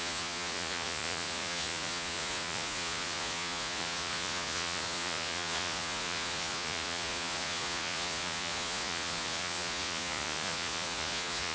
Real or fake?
fake